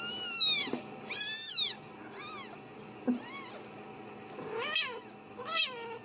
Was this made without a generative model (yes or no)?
yes